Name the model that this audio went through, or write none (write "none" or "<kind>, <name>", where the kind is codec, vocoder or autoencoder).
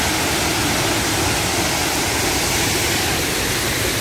none